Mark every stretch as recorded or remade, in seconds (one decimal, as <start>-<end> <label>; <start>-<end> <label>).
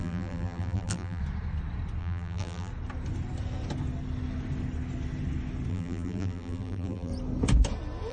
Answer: 0.0-1.2 remade; 1.2-2.0 recorded; 2.0-2.7 remade; 2.7-5.7 recorded; 5.7-7.1 remade; 7.1-8.1 recorded